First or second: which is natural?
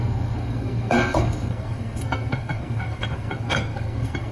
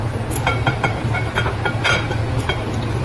second